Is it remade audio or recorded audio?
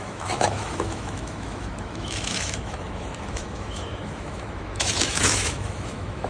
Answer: remade